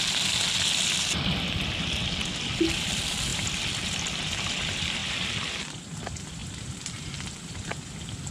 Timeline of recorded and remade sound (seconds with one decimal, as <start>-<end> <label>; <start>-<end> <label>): 0.0-3.3 recorded; 3.3-4.1 remade; 4.1-6.4 recorded; 6.4-7.9 remade; 7.9-8.3 recorded